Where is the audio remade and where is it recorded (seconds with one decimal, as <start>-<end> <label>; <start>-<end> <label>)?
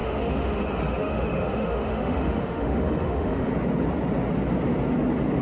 0.0-0.6 remade; 0.6-1.0 recorded; 1.0-3.5 remade; 3.5-5.4 recorded